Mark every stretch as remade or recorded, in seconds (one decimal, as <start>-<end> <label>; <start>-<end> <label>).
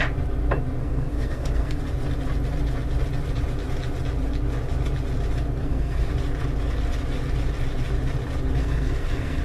0.0-0.8 recorded; 0.8-1.8 remade; 1.8-5.6 recorded; 5.6-6.1 remade; 6.1-8.6 recorded; 8.6-9.4 remade